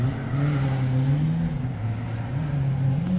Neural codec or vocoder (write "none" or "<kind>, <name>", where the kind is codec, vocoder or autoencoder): none